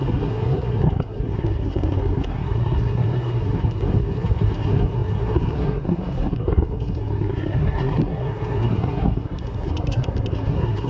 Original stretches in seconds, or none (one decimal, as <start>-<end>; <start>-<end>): none

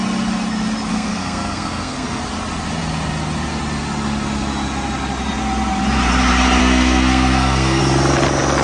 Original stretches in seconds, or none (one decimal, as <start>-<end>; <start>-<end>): 0.0-0.9; 2.2-6.6; 7.8-8.6